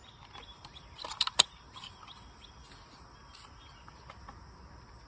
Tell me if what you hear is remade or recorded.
recorded